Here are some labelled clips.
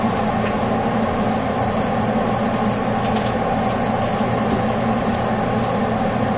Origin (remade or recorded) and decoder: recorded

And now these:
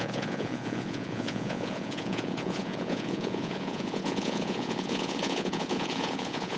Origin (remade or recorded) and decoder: remade, vocoder, Vocos